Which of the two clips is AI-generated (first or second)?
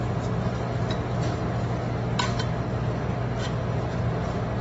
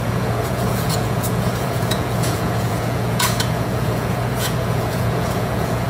second